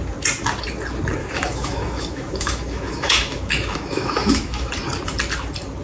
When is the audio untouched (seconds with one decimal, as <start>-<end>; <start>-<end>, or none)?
0.0-1.2; 4.7-5.8